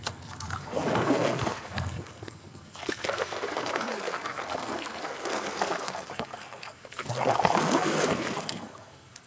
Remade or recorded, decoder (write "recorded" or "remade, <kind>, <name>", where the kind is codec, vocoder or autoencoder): remade, codec, SNAC